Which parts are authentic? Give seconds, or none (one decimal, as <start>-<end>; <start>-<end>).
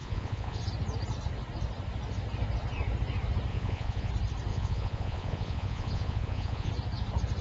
0.6-3.5; 4.1-4.5; 6.7-7.4